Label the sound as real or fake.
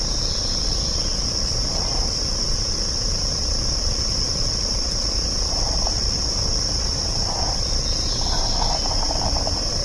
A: real